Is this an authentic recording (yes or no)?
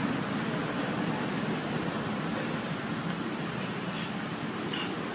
yes